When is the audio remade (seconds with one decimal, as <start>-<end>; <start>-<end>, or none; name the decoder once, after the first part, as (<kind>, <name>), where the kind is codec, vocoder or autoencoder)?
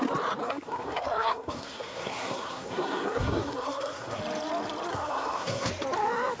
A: 0.4-4.2 (codec, SNAC); 4.9-5.7